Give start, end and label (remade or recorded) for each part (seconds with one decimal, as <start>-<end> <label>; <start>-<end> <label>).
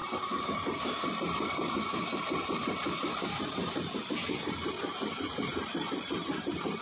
0.0-6.8 remade